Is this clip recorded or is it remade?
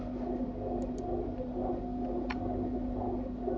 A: recorded